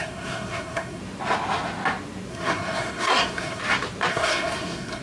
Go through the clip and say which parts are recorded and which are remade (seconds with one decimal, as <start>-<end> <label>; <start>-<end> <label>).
0.0-1.0 remade; 1.0-2.3 recorded; 2.3-3.6 remade; 3.6-4.1 recorded; 4.1-5.0 remade